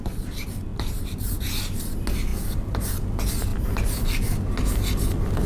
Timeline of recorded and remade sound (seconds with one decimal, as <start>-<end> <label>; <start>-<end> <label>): 0.0-0.7 recorded; 0.7-1.5 remade; 1.5-5.5 recorded